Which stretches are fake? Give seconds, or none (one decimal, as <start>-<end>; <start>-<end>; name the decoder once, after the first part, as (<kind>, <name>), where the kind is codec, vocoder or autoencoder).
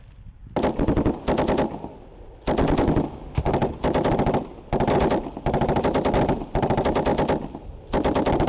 none